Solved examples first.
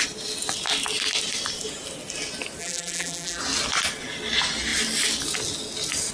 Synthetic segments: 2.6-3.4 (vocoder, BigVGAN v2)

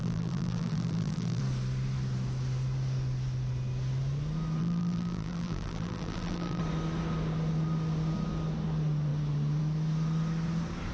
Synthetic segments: 0.0-1.4 (vocoder, BigVGAN v2); 4.6-6.6

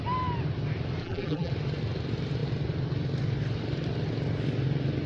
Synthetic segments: 1.0-1.5 (vocoder, BigVGAN v2)

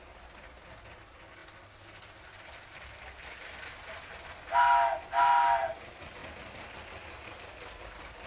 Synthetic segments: none

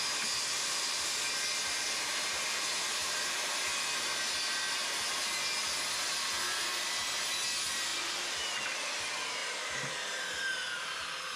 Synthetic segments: 3.0-3.6 (vocoder, BigVGAN v2); 7.9-8.5

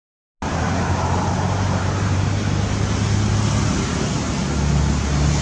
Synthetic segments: 0.5-2.3 (vocoder, BigVGAN v2); 3.7-4.3

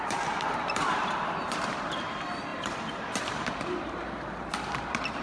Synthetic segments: 0.0-5.2 (vocoder, BigVGAN v2)

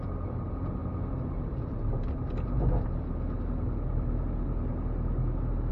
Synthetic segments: none